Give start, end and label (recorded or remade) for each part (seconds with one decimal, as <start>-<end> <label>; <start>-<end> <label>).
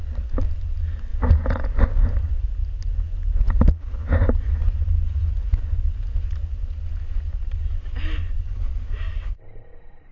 0.0-1.1 recorded; 1.1-1.8 remade; 1.8-10.1 recorded